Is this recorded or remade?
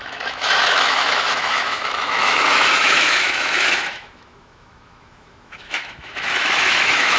remade